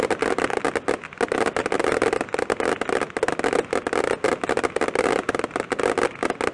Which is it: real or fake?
real